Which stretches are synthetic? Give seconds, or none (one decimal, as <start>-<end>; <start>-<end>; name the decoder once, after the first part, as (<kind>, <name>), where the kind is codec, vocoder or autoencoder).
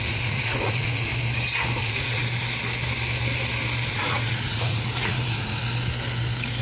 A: 0.0-1.1 (vocoder, Vocos); 1.8-2.2; 3.9-5.6